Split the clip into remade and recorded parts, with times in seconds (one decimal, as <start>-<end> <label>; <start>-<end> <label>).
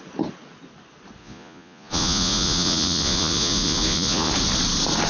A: 0.0-1.2 recorded; 1.2-4.3 remade; 4.3-5.1 recorded